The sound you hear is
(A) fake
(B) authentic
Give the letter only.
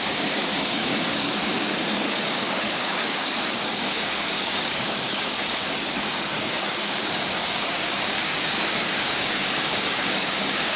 A